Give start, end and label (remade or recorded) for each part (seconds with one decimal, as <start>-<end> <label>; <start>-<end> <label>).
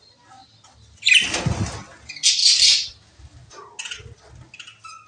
0.0-5.1 recorded